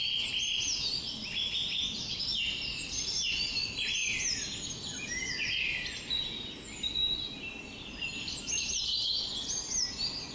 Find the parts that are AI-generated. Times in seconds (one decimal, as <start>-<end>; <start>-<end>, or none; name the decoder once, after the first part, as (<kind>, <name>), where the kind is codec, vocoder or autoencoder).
none